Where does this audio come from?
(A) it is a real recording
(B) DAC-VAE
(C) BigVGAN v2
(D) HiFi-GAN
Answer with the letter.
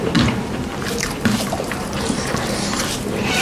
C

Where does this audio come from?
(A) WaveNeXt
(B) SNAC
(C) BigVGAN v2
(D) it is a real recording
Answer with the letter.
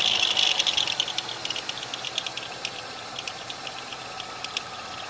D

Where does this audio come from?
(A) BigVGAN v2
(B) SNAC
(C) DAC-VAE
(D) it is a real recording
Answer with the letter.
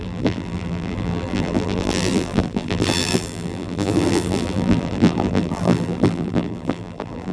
A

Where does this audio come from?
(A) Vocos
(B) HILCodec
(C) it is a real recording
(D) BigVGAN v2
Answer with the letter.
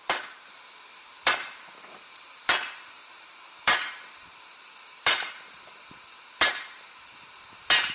D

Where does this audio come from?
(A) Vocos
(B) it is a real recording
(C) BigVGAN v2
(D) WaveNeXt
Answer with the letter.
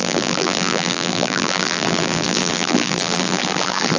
C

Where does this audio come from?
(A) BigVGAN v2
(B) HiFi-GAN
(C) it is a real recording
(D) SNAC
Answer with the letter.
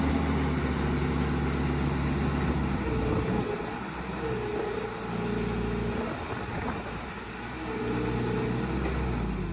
C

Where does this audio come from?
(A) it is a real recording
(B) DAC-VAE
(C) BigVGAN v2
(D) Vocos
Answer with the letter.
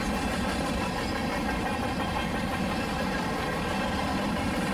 C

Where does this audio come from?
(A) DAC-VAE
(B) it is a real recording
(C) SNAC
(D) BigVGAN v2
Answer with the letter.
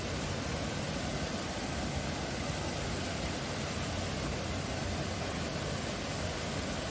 B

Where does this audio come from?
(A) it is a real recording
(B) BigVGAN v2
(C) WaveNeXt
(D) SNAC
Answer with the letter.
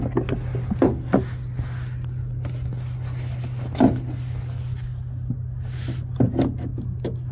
A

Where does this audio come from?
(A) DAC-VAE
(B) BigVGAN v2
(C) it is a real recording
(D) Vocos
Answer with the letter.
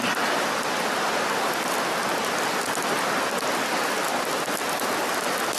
C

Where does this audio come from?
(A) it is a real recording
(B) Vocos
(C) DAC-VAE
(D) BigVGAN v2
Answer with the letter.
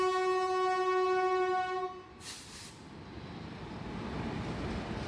A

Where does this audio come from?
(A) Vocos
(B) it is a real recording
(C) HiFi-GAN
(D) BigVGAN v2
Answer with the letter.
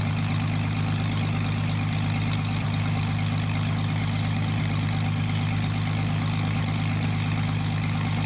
B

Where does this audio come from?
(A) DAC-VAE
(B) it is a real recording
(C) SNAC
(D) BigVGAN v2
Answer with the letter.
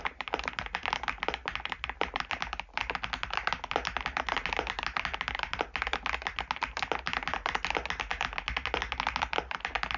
B